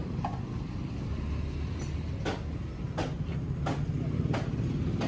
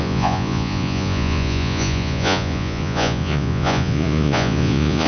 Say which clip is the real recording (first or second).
first